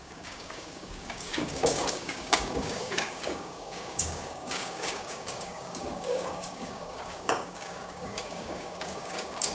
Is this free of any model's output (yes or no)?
no